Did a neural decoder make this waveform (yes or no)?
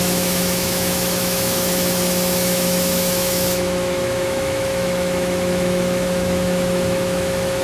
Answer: yes